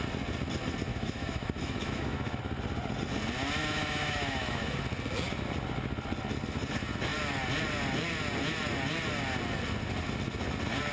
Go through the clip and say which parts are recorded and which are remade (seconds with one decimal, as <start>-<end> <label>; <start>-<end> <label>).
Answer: 0.0-0.9 recorded; 0.9-2.4 remade; 2.4-3.6 recorded; 3.6-4.8 remade; 4.8-10.9 recorded